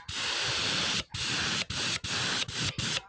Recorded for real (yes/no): yes